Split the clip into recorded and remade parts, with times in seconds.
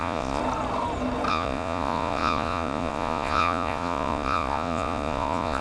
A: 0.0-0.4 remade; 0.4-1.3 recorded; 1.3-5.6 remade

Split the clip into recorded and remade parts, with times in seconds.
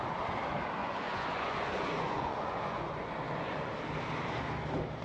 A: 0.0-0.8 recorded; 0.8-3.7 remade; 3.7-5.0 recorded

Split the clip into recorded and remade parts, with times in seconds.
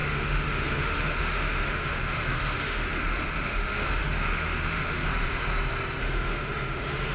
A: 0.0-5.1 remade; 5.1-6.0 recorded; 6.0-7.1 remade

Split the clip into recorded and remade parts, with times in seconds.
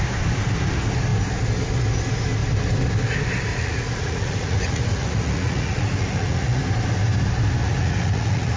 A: 0.0-3.5 recorded; 3.5-6.6 remade; 6.6-7.6 recorded; 7.6-8.6 remade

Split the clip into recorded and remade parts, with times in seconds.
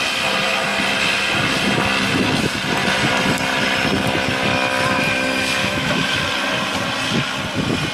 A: 0.0-5.6 recorded; 5.6-6.2 remade; 6.2-7.9 recorded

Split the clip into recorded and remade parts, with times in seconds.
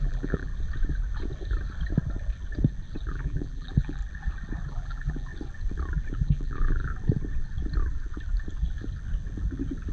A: 0.0-0.5 remade; 0.5-3.1 recorded; 3.1-4.0 remade; 4.0-4.7 recorded; 4.7-5.3 remade; 5.3-6.1 recorded; 6.1-6.9 remade; 6.9-9.9 recorded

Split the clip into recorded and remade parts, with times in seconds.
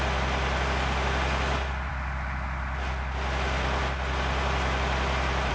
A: 0.0-5.5 recorded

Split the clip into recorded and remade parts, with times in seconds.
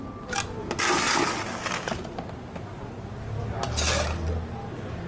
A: 0.0-0.6 recorded; 0.6-1.1 remade; 1.1-5.1 recorded